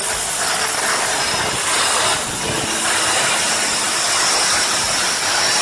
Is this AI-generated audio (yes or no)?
no